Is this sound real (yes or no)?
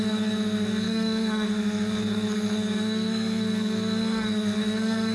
no